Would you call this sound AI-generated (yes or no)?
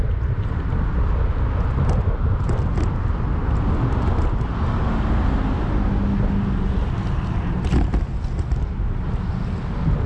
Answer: no